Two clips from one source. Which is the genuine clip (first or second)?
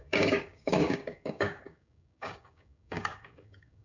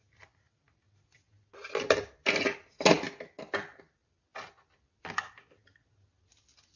second